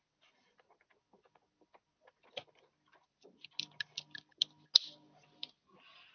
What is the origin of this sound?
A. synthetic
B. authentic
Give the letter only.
B